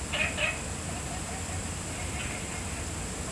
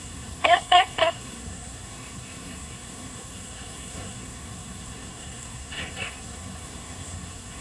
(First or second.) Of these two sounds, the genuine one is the first